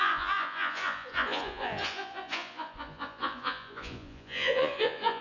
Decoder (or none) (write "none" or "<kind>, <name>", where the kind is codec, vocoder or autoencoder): vocoder, Vocos